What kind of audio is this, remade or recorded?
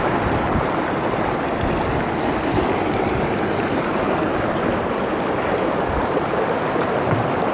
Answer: recorded